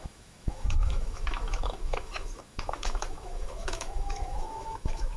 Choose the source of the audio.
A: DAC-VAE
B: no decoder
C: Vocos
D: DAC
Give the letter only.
A